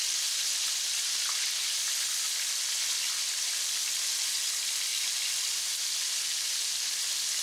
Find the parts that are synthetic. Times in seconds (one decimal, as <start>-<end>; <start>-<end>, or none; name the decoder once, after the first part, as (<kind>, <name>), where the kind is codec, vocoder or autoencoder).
none